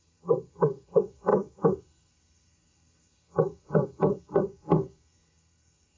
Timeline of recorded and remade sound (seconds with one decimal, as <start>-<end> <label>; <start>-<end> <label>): 0.0-6.0 remade